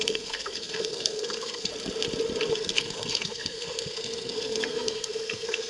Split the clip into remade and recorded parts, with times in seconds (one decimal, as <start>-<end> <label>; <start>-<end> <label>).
0.0-1.7 remade; 1.7-2.5 recorded; 2.5-5.7 remade